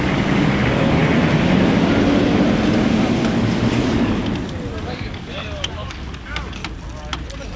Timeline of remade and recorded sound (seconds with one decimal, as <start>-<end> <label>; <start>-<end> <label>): 0.0-1.0 remade; 1.0-3.4 recorded; 3.4-4.2 remade; 4.2-4.8 recorded; 4.8-6.6 remade; 6.6-7.6 recorded